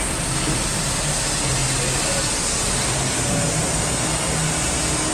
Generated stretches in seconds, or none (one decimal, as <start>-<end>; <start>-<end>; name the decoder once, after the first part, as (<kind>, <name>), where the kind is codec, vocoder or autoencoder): none